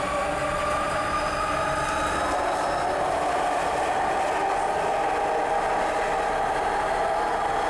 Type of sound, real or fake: real